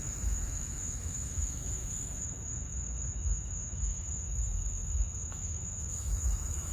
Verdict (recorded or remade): remade